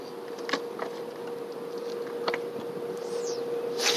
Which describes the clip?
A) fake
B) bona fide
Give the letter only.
B